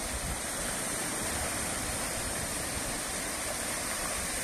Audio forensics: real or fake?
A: fake